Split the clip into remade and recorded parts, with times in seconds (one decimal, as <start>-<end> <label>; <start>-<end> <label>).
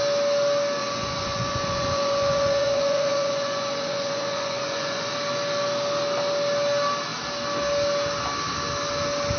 0.0-0.8 recorded; 0.8-5.1 remade; 5.1-9.4 recorded